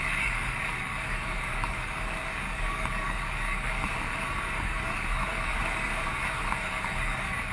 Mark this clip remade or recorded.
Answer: remade